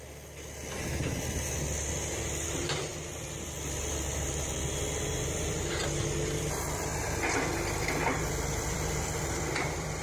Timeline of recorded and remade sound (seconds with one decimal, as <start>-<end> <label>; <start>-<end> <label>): 0.0-10.0 remade